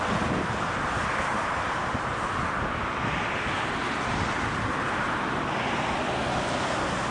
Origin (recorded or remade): recorded